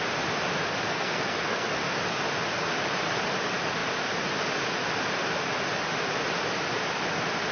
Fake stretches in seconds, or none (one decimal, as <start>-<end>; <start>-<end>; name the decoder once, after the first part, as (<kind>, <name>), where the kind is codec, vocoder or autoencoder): 0.9-1.8 (codec, SNAC)

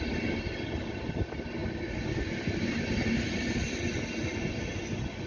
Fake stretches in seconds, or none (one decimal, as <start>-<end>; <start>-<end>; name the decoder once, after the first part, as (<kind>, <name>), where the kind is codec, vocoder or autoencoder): none